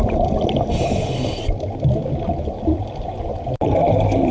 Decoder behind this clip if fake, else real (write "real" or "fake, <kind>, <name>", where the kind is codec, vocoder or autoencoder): real